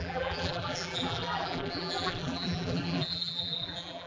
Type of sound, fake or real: fake